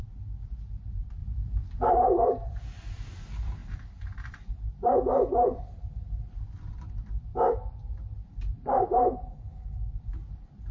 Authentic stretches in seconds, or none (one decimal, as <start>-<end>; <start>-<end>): 7.3-10.7